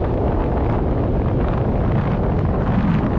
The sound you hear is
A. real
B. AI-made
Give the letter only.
A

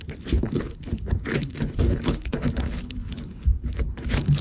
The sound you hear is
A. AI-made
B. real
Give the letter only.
A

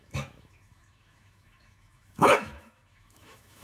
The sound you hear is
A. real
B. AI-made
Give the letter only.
B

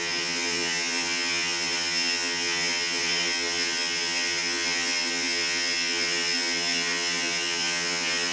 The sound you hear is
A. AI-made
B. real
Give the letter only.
A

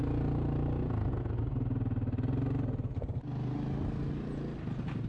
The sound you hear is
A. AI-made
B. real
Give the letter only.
B